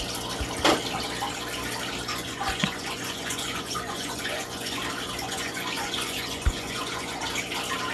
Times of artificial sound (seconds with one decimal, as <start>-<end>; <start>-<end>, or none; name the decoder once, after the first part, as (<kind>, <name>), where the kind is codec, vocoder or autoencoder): 2.1-4.8 (vocoder, Vocos); 5.2-7.2